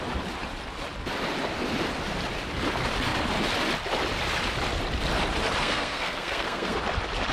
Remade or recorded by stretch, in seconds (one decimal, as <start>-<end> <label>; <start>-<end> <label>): 0.0-5.6 recorded; 5.6-6.8 remade; 6.8-7.3 recorded